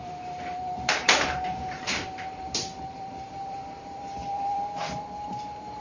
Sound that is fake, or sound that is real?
fake